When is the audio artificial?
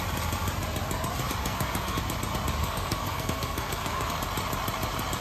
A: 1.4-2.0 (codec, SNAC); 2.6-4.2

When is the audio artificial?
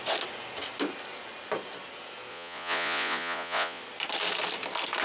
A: 2.3-3.8 (vocoder, Vocos)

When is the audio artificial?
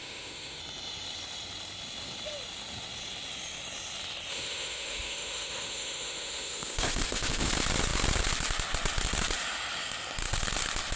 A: 0.0-0.6 (autoencoder, DAC-VAE); 4.3-7.5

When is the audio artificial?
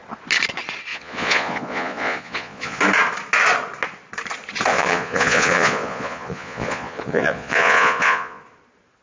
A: 0.9-2.8 (vocoder, Vocos); 4.7-8.4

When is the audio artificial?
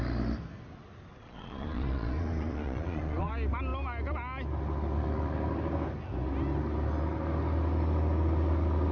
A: 1.2-3.3 (vocoder, Vocos)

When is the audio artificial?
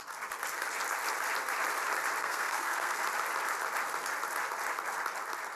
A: 2.2-3.0 (codec, SNAC)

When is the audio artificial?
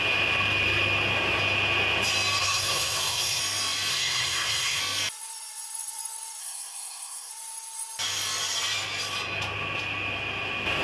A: 2.4-3.4 (codec, SNAC); 3.9-4.8; 6.4-7.3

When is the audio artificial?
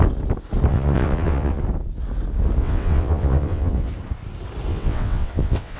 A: 0.7-1.6 (vocoder, WaveNeXt); 2.6-3.9; 4.7-5.8